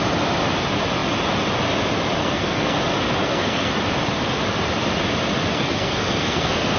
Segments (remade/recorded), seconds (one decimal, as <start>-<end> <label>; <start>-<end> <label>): 0.0-2.2 recorded; 2.2-2.8 remade; 2.8-3.2 recorded; 3.2-3.7 remade; 3.7-5.5 recorded; 5.5-6.8 remade